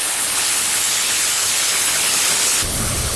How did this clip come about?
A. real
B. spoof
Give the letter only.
B